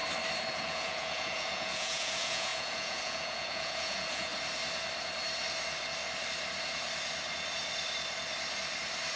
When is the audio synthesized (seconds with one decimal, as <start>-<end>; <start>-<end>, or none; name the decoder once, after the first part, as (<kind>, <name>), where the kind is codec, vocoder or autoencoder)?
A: 0.5-4.3 (vocoder, Vocos)